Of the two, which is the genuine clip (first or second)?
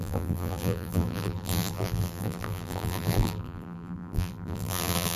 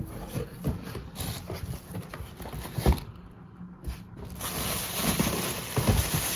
second